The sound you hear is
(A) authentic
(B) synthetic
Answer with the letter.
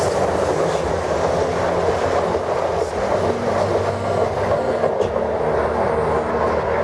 A